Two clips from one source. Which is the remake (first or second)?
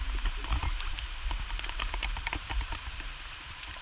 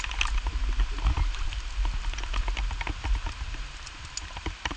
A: first